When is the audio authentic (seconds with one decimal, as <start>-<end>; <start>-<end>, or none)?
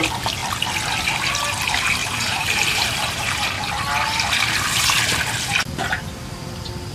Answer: 0.0-2.0; 3.2-6.9